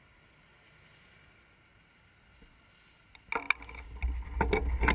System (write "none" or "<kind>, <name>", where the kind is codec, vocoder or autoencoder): none